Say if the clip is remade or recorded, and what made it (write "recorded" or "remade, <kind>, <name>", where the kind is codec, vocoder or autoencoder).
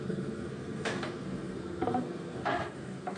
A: remade, codec, SNAC